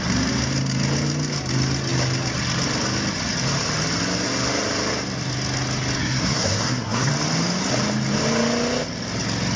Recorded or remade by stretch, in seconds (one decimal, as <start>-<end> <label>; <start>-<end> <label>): 0.0-6.0 recorded; 6.0-7.1 remade; 7.1-9.6 recorded